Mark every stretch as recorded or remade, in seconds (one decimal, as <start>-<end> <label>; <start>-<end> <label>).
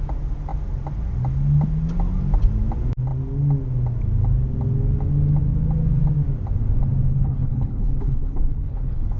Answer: 0.0-7.1 recorded; 7.1-9.2 remade